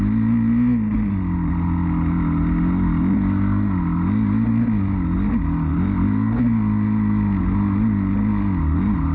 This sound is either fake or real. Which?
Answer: real